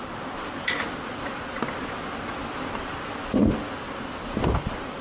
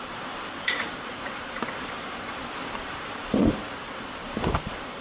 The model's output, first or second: second